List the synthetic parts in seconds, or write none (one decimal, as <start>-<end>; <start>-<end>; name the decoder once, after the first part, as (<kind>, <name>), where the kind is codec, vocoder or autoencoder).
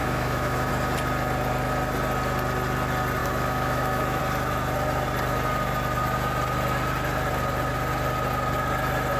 0.0-0.7 (autoencoder, DAC-VAE); 3.2-4.2